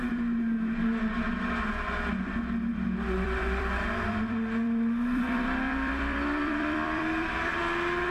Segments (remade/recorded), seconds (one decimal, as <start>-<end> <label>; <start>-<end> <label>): 0.0-2.7 recorded; 2.7-7.6 remade; 7.6-8.1 recorded